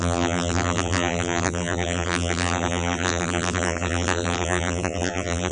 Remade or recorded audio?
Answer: remade